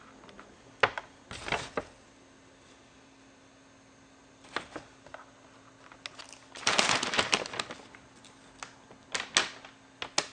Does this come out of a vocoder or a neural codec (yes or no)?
no